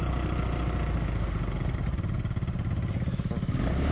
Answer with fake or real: real